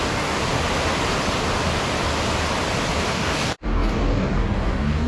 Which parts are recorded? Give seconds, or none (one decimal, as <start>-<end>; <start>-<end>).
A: 0.4-3.1

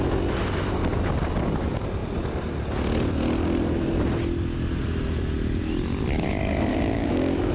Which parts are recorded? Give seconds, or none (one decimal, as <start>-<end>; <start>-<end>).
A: 0.0-6.7

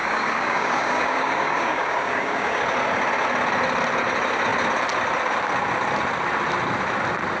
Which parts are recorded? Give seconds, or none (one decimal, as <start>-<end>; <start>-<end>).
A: 2.6-7.4

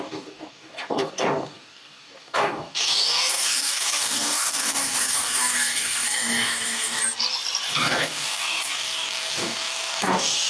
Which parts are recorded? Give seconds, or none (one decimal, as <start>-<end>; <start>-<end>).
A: 7.0-7.7

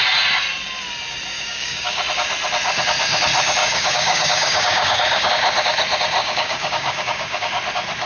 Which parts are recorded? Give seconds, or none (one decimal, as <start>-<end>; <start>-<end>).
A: 0.0-1.3; 2.0-3.6; 5.3-6.2; 7.5-8.1

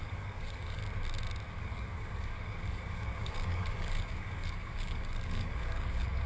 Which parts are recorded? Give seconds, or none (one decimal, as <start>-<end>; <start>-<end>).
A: 0.8-1.5

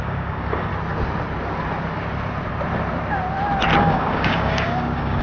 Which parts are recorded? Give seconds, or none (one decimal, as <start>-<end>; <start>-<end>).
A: 0.7-3.8

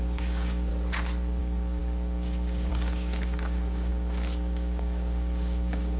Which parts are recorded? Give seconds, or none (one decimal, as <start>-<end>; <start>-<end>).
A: 0.7-1.4